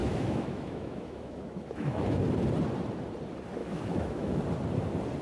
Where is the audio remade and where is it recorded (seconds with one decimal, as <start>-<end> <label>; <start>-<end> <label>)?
0.0-2.3 remade; 2.3-3.6 recorded; 3.6-4.4 remade; 4.4-5.2 recorded